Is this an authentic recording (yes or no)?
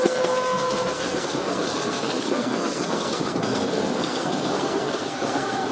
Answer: no